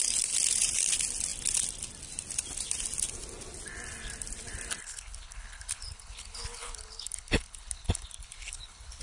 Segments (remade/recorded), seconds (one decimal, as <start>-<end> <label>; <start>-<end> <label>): 0.0-4.8 recorded; 4.8-9.0 remade